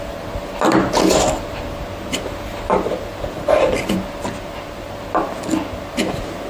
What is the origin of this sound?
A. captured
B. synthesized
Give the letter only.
A